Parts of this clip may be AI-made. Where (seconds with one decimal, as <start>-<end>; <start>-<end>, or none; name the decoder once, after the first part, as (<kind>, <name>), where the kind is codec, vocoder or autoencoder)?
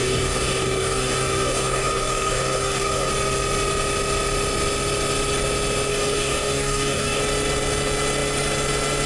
0.0-3.1 (codec, DAC); 5.9-7.2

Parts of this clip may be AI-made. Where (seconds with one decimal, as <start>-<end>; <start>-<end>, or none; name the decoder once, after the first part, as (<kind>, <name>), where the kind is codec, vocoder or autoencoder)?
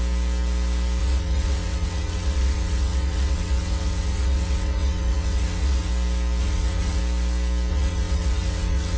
1.0-5.9 (vocoder, WaveNeXt); 6.4-7.0; 7.7-9.0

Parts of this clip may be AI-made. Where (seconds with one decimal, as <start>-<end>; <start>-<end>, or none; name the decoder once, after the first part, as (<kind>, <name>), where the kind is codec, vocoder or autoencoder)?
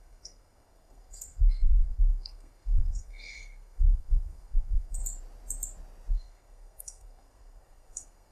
0.0-5.0 (codec, SNAC); 6.1-8.3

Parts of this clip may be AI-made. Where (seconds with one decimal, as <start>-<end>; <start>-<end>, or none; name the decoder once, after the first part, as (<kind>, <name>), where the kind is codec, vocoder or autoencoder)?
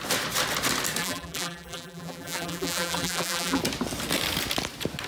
1.0-3.6 (vocoder, BigVGAN v2)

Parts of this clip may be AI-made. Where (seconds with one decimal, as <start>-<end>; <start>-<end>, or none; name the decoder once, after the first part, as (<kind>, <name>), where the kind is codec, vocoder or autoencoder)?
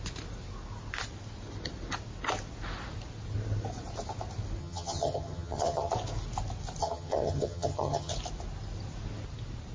4.6-5.9 (vocoder, HiFi-GAN); 6.8-8.1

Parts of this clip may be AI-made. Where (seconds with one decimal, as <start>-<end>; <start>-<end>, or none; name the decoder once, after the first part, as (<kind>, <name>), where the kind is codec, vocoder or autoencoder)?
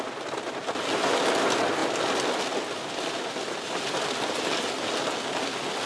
none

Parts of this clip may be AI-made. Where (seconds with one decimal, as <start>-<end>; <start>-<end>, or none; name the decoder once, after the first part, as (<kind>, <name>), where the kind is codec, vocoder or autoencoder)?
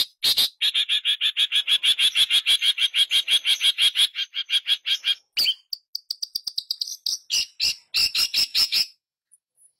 8.5-9.8 (vocoder, Vocos)